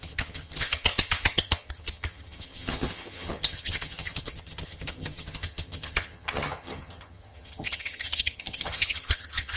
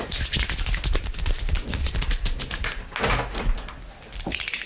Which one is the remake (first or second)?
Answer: first